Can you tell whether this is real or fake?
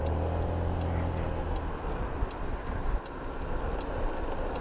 real